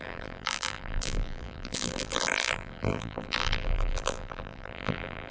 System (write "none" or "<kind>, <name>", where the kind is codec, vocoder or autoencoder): vocoder, BigVGAN v2